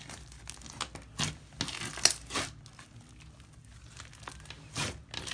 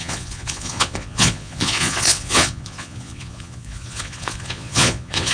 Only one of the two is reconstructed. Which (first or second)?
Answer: second